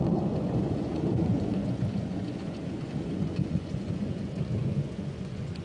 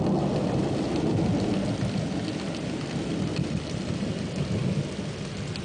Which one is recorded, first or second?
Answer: second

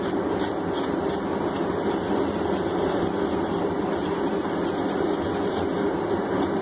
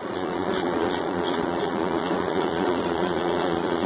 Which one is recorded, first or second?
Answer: first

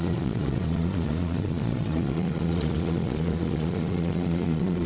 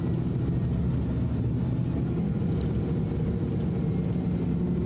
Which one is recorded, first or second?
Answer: second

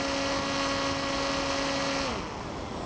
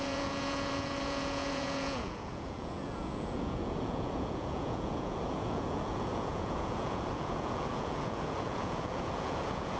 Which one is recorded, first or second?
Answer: first